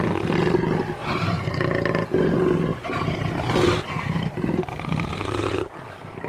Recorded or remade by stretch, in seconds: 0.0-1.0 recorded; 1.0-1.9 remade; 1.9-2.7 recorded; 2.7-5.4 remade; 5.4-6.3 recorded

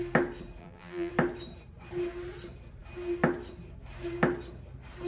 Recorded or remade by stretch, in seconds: 0.0-0.6 recorded; 0.6-1.1 remade; 1.1-5.1 recorded

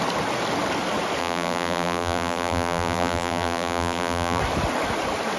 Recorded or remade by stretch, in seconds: 0.0-1.2 recorded; 1.2-4.4 remade; 4.4-5.4 recorded

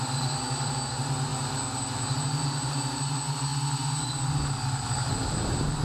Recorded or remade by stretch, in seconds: 0.0-3.5 remade; 3.5-5.1 recorded; 5.1-5.8 remade

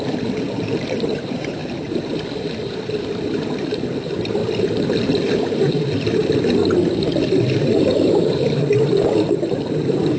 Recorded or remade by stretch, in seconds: 0.0-1.6 remade; 1.6-2.6 recorded; 2.6-4.4 remade; 4.4-5.7 recorded; 5.7-6.6 remade; 6.6-7.9 recorded; 7.9-10.2 remade

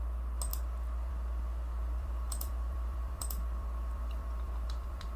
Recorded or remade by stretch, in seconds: 0.0-1.8 recorded; 1.8-5.2 remade